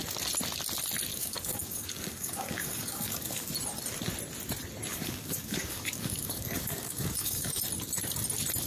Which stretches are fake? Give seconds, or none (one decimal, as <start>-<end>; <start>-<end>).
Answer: 1.1-3.5; 4.9-7.6